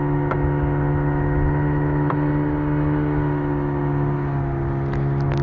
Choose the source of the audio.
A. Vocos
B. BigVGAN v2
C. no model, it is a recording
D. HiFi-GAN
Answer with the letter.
C